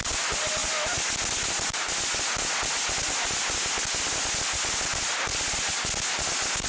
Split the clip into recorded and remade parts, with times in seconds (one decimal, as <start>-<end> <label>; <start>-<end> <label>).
0.0-6.7 recorded